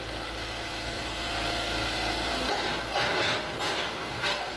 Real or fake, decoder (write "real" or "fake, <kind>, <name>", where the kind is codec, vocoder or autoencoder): real